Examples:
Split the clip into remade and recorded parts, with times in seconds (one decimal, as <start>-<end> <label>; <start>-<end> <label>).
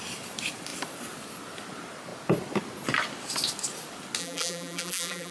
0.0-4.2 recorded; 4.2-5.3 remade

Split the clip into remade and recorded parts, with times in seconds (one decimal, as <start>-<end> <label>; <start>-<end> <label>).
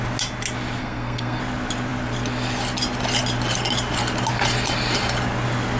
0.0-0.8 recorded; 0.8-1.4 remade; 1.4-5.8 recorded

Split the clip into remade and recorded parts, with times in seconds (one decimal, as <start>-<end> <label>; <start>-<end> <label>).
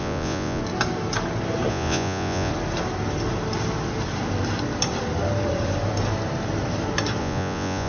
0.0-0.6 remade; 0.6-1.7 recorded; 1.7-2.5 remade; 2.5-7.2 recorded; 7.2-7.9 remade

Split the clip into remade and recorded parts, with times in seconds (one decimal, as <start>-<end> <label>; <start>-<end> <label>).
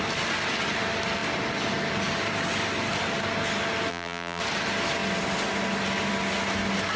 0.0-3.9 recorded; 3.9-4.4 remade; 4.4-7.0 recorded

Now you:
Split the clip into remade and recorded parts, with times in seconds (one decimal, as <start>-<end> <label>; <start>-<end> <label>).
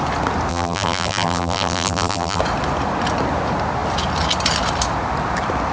0.0-0.5 recorded; 0.5-2.4 remade; 2.4-5.7 recorded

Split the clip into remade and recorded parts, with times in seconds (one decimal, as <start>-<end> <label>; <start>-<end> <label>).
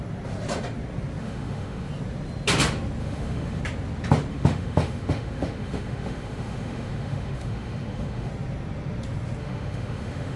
0.0-1.2 recorded; 1.2-1.9 remade; 1.9-3.0 recorded; 3.0-3.6 remade; 3.6-4.3 recorded; 4.3-8.3 remade; 8.3-9.4 recorded; 9.4-10.4 remade